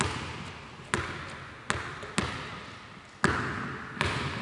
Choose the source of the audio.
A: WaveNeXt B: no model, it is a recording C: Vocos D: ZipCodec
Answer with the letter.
B